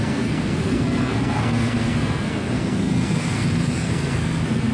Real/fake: fake